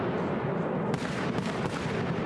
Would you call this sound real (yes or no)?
yes